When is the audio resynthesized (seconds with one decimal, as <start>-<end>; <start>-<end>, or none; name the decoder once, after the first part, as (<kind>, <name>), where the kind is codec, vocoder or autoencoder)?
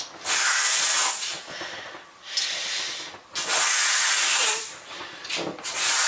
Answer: 1.3-5.0 (vocoder, BigVGAN v2)